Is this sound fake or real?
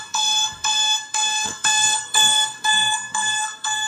fake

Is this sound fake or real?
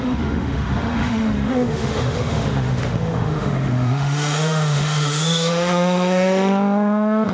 fake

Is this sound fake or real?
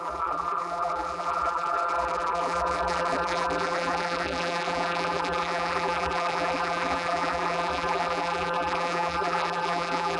fake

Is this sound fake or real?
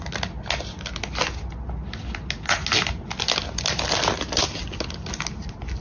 real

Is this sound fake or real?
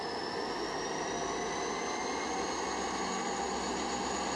real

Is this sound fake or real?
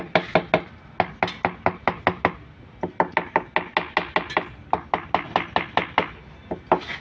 real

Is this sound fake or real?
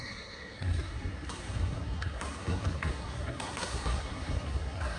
fake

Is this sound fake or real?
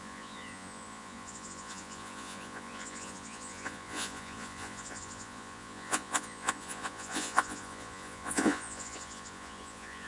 fake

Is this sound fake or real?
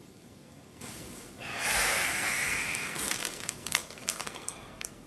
fake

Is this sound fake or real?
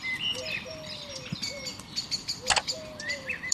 real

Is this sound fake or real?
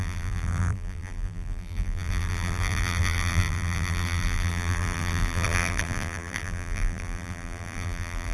fake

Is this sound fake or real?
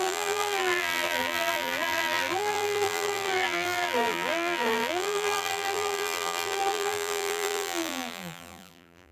fake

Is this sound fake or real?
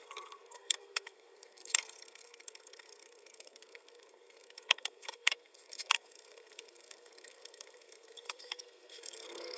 fake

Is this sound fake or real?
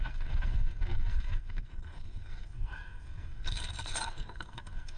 fake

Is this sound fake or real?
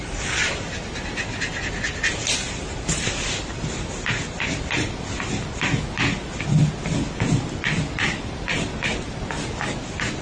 real